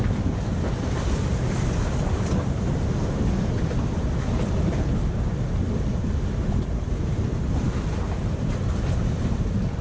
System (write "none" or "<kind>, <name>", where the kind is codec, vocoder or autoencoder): none